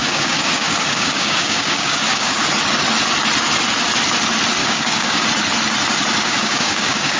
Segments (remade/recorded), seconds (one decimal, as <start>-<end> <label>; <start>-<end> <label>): 0.0-2.5 remade; 2.5-4.6 recorded; 4.6-5.2 remade; 5.2-6.2 recorded; 6.2-7.2 remade